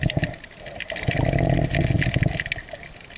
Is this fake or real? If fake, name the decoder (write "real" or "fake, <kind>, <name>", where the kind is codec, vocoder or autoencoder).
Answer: real